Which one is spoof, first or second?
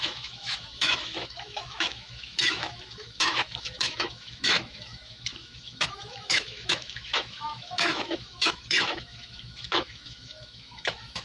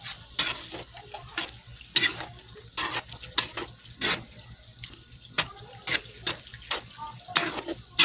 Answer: first